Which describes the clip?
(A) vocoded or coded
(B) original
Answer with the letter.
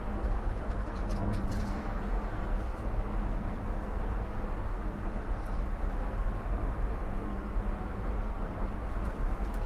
A